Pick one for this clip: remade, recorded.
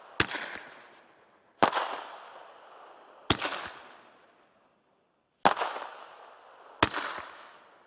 recorded